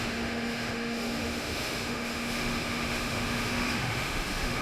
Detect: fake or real fake